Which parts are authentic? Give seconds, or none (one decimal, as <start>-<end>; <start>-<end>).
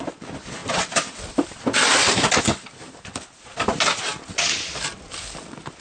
0.0-5.8